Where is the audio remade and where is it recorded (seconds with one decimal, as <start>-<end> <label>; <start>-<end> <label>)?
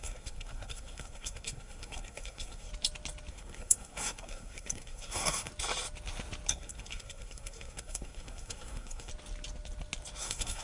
0.0-2.7 remade; 2.7-3.3 recorded; 3.3-5.5 remade; 5.5-6.5 recorded; 6.5-9.1 remade; 9.1-10.2 recorded; 10.2-10.6 remade